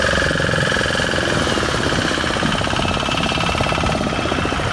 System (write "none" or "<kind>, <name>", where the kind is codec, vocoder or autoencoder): none